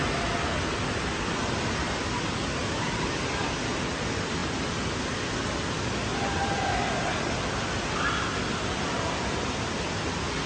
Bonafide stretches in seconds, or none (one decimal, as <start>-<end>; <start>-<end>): 0.0-10.5